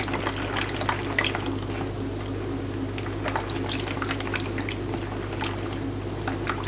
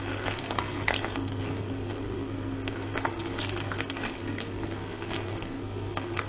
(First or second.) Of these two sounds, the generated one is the second